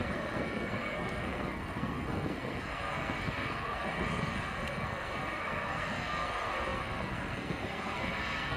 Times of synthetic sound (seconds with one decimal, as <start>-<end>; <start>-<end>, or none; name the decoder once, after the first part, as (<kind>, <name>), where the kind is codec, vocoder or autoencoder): 0.0-8.6 (codec, SNAC)